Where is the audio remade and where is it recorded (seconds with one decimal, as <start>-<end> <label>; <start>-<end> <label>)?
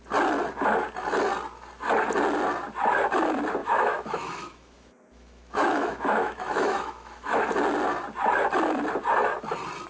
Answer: 0.0-3.6 recorded; 3.6-7.4 remade; 7.4-9.9 recorded